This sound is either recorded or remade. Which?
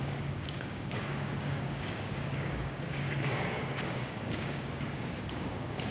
remade